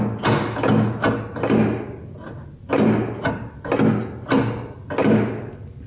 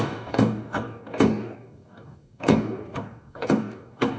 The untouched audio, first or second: first